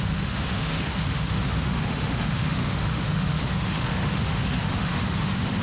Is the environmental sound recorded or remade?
remade